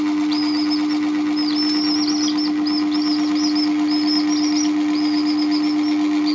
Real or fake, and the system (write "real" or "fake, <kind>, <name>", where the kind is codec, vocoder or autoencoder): real